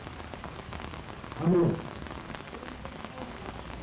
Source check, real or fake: fake